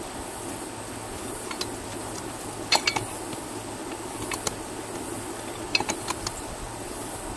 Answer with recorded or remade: recorded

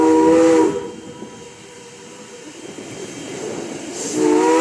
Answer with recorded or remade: recorded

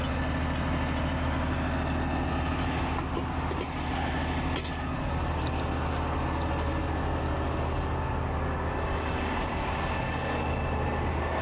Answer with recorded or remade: recorded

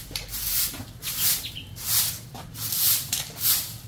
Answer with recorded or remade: remade